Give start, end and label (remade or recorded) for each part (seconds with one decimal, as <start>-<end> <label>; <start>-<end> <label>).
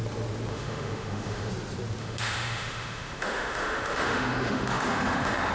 0.0-0.5 recorded; 0.5-1.5 remade; 1.5-2.0 recorded; 2.0-5.5 remade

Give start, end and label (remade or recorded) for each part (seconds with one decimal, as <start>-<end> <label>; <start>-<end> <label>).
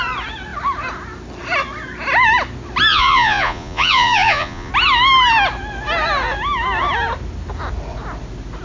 0.0-2.9 recorded; 2.9-4.7 remade; 4.7-8.6 recorded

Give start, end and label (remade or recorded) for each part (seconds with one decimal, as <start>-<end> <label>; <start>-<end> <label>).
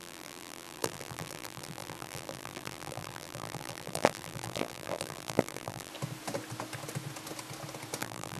0.0-5.9 remade; 5.9-8.0 recorded; 8.0-8.4 remade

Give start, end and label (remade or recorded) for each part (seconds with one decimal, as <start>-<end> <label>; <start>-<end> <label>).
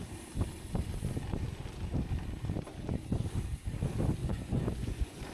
0.0-4.2 recorded; 4.2-5.3 remade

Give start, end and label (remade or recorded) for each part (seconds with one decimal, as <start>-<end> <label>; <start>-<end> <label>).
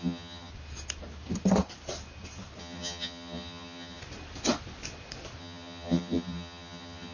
0.0-0.5 remade; 0.5-2.6 recorded; 2.6-4.0 remade; 4.0-5.4 recorded; 5.4-7.1 remade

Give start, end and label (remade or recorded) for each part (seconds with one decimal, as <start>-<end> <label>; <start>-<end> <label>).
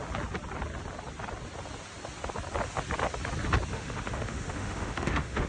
0.0-3.7 recorded; 3.7-5.5 remade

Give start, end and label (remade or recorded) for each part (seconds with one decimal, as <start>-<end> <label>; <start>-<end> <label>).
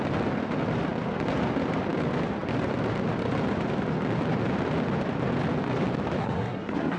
0.0-6.2 recorded; 6.2-7.0 remade